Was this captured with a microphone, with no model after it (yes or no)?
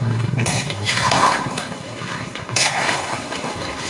no